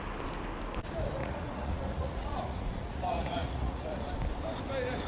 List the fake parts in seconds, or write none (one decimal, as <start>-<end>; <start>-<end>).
1.2-4.0